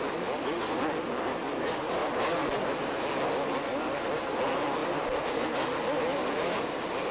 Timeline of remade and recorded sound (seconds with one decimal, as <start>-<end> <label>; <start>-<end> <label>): 0.0-7.1 recorded